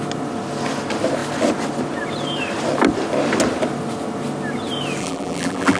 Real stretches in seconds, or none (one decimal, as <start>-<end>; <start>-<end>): 0.0-5.0

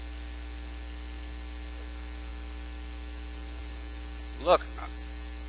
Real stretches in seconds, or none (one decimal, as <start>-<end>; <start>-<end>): 0.0-5.5

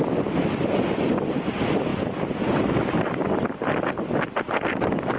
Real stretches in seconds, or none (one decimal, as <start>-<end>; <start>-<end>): 0.0-5.2